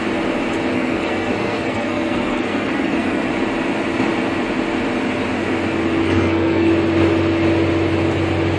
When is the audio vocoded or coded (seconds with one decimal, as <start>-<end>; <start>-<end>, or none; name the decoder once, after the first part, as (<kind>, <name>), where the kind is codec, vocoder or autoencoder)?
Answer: 0.7-3.3 (codec, SNAC); 6.0-6.7